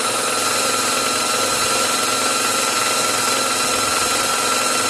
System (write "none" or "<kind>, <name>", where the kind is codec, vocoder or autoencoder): none